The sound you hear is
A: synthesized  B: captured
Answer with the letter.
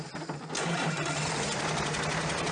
B